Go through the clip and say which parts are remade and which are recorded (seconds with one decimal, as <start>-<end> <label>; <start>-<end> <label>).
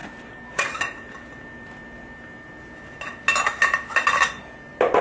0.0-5.0 recorded